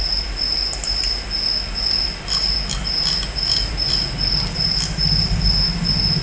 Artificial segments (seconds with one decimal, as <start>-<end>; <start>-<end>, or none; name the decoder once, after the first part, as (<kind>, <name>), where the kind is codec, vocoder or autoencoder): none